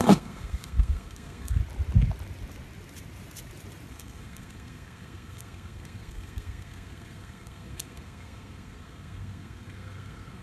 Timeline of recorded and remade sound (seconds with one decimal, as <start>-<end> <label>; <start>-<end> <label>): 0.0-1.6 remade; 1.6-3.9 recorded; 3.9-10.4 remade